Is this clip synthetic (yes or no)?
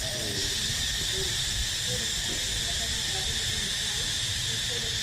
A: no